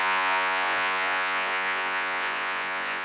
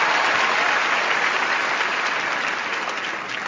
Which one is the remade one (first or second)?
first